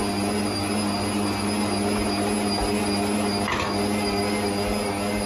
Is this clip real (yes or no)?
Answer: yes